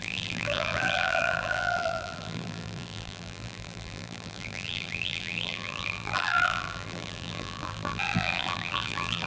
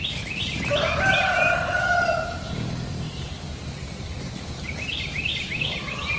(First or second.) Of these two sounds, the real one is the second